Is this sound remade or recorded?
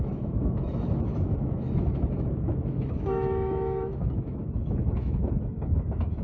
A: remade